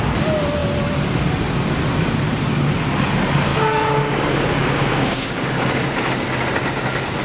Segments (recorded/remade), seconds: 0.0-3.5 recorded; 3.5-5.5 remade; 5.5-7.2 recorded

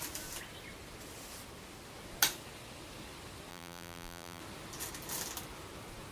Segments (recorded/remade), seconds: 0.0-3.5 recorded; 3.5-4.4 remade; 4.4-6.1 recorded

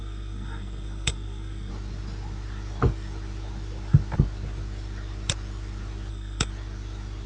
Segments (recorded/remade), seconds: 0.0-1.7 remade; 1.7-6.1 recorded; 6.1-6.5 remade; 6.5-7.3 recorded

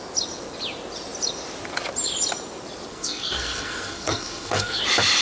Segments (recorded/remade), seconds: 0.0-2.9 recorded; 2.9-4.8 remade; 4.8-5.2 recorded

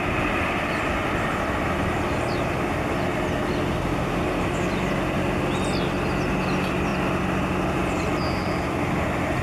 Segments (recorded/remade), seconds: 0.0-9.4 recorded

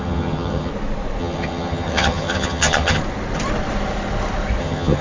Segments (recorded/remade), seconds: 0.0-0.7 remade; 0.7-1.2 recorded; 1.2-3.0 remade; 3.0-4.6 recorded; 4.6-5.0 remade

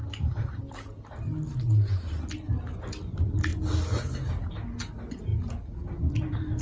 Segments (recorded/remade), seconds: 0.0-6.6 recorded